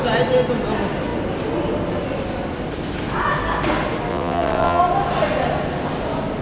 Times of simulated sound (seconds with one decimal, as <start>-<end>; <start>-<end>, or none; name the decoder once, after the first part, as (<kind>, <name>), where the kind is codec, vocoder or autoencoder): 4.1-4.8 (vocoder, WaveNeXt)